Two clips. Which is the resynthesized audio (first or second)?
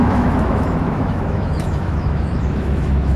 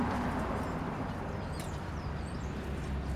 first